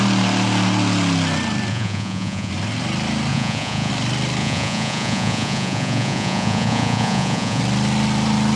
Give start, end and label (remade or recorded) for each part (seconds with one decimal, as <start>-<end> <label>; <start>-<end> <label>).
0.0-1.7 recorded; 1.7-2.5 remade; 2.5-3.3 recorded; 3.3-3.9 remade; 3.9-4.4 recorded; 4.4-7.6 remade; 7.6-8.6 recorded